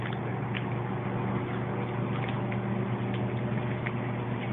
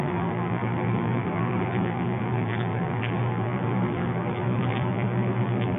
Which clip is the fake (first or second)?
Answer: second